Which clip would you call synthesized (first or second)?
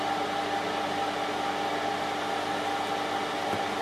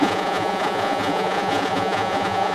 second